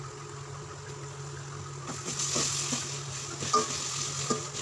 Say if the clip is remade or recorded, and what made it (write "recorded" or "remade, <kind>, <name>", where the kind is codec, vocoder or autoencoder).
recorded